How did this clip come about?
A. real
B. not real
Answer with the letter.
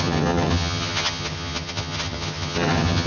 B